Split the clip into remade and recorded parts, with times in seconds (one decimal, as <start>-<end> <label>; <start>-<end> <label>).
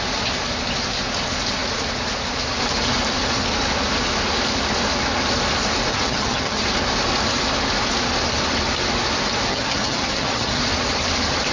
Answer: 0.0-5.9 recorded; 5.9-6.6 remade; 6.6-9.5 recorded; 9.5-10.6 remade; 10.6-11.5 recorded